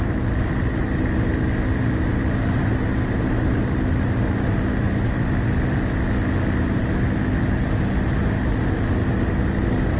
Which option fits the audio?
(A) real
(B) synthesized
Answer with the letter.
A